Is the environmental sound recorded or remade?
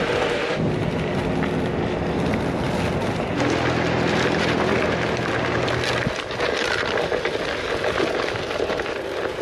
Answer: recorded